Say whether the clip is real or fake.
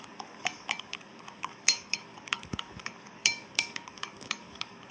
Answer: fake